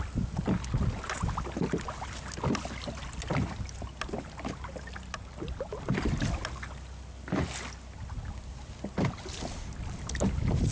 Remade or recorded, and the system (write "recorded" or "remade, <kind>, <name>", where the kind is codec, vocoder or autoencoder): recorded